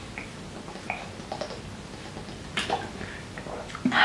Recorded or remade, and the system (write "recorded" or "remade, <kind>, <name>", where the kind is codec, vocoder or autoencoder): recorded